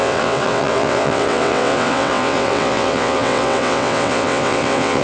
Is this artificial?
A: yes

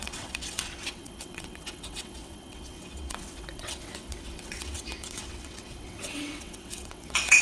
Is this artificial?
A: yes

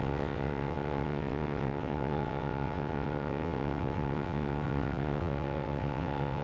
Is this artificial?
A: yes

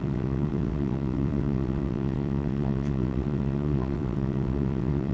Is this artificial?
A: yes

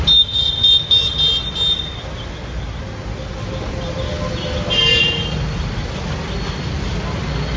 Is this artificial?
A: no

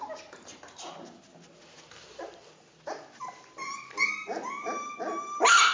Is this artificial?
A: no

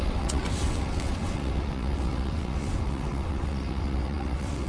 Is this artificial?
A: yes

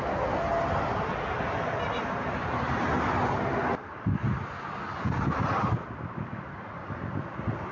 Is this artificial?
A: no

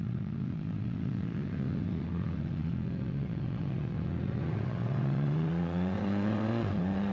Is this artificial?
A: yes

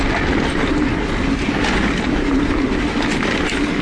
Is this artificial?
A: no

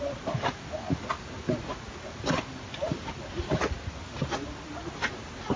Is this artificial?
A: no